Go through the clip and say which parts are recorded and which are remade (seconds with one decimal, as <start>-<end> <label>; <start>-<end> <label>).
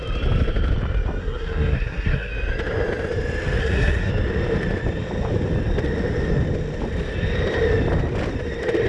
0.0-1.2 recorded; 1.2-2.3 remade; 2.3-3.6 recorded; 3.6-4.1 remade; 4.1-8.9 recorded